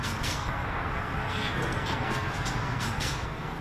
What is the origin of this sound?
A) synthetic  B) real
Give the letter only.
A